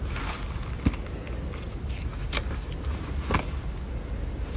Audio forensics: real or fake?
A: real